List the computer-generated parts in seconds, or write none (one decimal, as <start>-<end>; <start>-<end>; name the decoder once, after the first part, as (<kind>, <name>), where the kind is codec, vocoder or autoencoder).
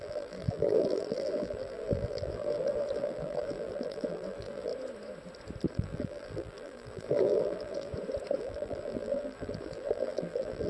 0.0-4.7 (vocoder, BigVGAN v2); 5.7-7.9; 8.4-10.7